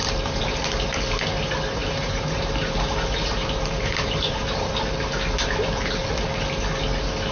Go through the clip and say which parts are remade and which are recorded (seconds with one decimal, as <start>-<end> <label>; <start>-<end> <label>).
0.0-0.5 remade; 0.5-1.8 recorded; 1.8-4.7 remade; 4.7-7.3 recorded